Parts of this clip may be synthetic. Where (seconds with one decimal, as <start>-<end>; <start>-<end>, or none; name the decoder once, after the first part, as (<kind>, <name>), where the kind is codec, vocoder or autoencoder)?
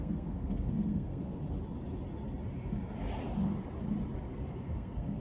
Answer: 0.0-1.4 (codec, SNAC); 4.5-5.2